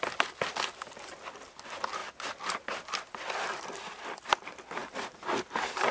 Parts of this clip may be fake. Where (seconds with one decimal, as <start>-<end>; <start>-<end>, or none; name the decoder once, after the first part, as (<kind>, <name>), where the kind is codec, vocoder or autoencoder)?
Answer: none